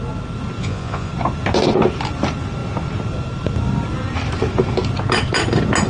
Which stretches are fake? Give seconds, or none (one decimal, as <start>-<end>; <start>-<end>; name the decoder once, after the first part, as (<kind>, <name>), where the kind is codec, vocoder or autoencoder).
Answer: 0.6-1.1 (vocoder, Vocos)